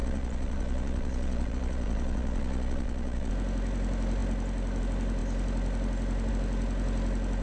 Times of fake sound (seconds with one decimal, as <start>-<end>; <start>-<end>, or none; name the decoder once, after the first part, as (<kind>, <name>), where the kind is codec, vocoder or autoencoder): 0.0-3.3 (vocoder, Vocos)